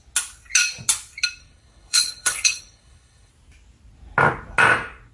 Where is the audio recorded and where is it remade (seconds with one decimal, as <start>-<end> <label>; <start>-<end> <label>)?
0.0-1.4 recorded; 1.4-3.3 remade; 3.3-5.1 recorded